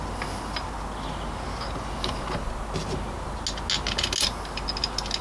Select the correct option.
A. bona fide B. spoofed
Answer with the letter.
A